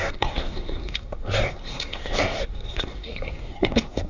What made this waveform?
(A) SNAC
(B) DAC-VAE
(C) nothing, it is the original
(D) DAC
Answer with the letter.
A